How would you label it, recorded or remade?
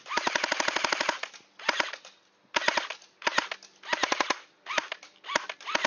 recorded